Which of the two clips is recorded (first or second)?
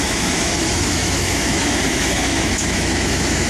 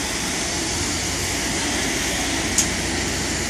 second